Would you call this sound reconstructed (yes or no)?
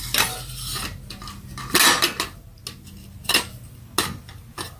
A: no